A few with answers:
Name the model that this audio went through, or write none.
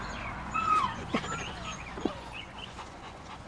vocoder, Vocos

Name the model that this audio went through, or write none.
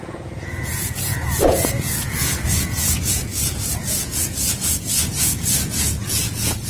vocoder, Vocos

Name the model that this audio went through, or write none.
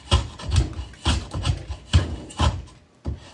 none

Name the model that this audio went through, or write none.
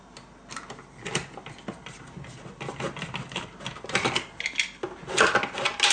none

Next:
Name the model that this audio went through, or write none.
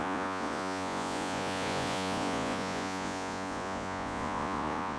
vocoder, Vocos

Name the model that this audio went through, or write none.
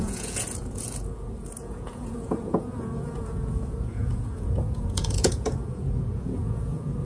vocoder, Vocos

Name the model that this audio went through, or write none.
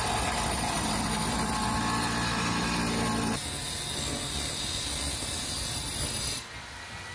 none